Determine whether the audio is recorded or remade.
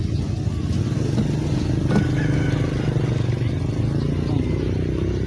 recorded